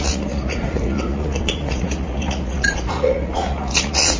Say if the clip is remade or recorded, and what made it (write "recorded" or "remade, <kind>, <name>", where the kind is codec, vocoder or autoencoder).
remade, vocoder, Vocos